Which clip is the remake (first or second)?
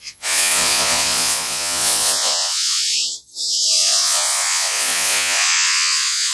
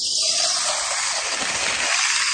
first